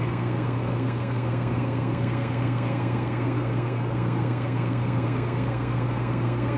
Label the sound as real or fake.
fake